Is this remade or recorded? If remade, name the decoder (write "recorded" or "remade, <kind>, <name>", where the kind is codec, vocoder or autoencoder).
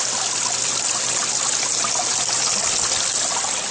recorded